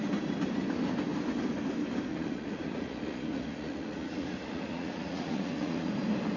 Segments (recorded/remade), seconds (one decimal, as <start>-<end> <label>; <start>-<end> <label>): 0.0-2.1 recorded; 2.1-5.9 remade; 5.9-6.4 recorded